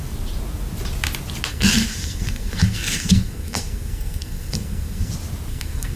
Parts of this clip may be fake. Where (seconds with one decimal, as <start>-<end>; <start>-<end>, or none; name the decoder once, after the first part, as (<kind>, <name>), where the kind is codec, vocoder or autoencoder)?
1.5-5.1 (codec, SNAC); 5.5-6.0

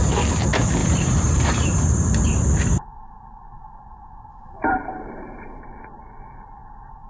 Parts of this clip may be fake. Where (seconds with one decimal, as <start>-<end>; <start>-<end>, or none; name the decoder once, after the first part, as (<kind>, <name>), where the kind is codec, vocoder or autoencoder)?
0.8-2.1 (vocoder, BigVGAN v2); 4.3-5.6

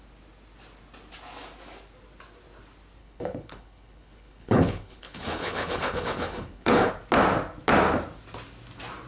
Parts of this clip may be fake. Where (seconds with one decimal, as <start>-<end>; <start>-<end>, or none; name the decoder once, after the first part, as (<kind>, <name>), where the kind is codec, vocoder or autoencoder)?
3.0-6.9 (codec, HILCodec)

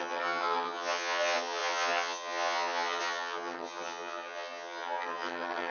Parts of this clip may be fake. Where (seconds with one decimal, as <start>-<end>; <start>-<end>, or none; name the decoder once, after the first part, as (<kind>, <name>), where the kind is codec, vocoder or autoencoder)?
0.0-5.7 (vocoder, HiFi-GAN)

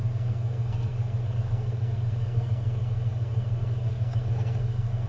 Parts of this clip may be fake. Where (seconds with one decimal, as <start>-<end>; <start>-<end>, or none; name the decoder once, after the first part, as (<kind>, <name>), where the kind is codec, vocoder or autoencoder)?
0.0-5.1 (codec, SNAC)

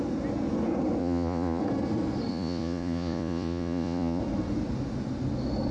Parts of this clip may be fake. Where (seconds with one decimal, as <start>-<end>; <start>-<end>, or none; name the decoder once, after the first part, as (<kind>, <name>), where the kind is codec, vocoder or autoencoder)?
1.0-1.6 (vocoder, Vocos); 2.3-4.2